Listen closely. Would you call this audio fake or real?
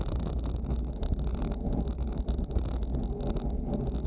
real